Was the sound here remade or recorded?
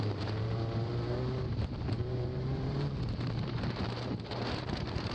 remade